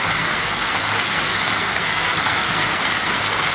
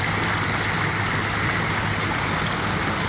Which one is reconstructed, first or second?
first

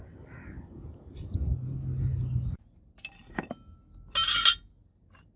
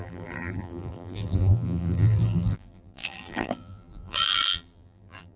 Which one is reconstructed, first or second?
second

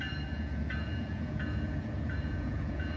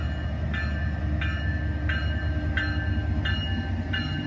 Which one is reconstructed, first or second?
first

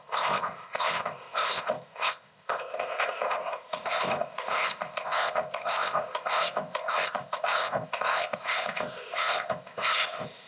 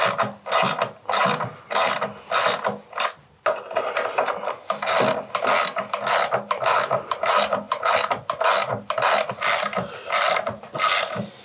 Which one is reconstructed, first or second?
first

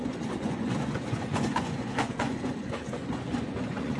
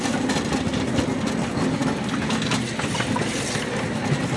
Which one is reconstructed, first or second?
first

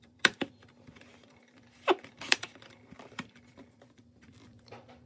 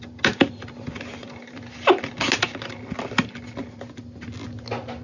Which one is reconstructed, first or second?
first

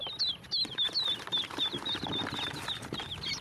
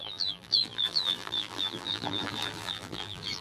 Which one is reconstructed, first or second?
second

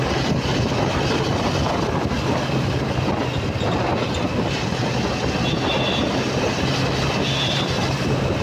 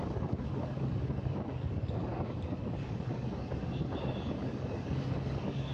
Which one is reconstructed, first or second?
second